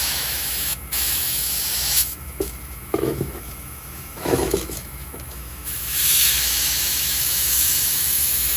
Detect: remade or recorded remade